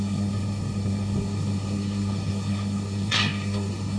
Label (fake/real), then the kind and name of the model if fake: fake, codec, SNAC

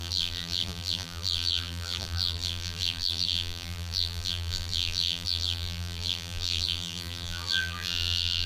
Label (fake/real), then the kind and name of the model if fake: fake, vocoder, BigVGAN v2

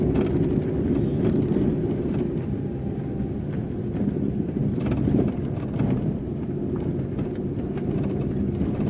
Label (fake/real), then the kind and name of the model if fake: real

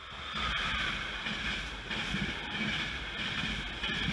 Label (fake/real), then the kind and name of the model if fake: fake, vocoder, BigVGAN v2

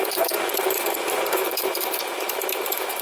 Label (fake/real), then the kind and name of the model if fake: fake, vocoder, BigVGAN v2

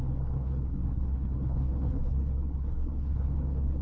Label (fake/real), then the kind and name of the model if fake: fake, codec, HILCodec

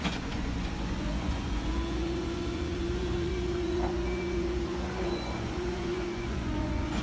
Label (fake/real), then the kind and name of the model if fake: fake, vocoder, Vocos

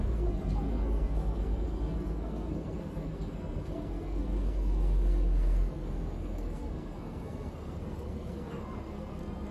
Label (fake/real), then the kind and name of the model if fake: fake, codec, SNAC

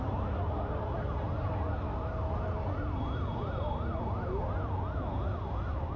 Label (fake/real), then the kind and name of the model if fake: real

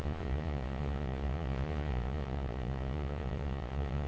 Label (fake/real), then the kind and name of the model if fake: fake, vocoder, Vocos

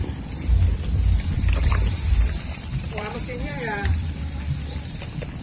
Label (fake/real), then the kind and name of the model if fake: fake, vocoder, BigVGAN v2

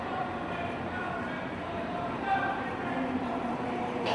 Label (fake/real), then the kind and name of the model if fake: fake, vocoder, BigVGAN v2